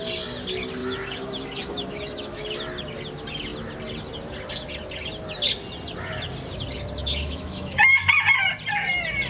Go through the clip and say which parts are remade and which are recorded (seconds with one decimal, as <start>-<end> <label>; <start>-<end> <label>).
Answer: 0.0-0.8 recorded; 0.8-2.6 remade; 2.6-7.0 recorded; 7.0-7.9 remade; 7.9-9.3 recorded